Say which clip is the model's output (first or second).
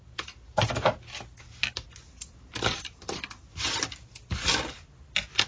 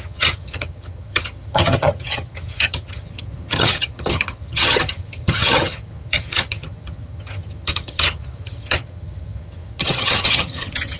second